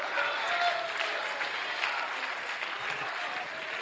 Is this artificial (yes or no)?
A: no